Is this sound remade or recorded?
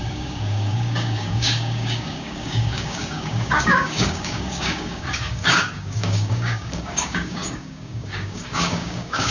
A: remade